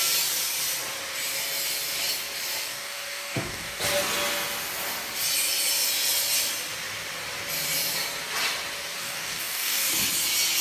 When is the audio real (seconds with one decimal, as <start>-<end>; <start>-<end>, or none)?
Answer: 0.0-2.6; 3.8-9.0; 9.9-10.6